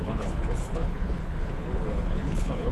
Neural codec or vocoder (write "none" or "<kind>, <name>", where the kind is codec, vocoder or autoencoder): codec, HILCodec